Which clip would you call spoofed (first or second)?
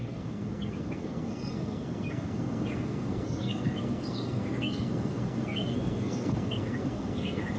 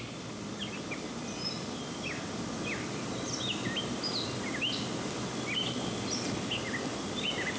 first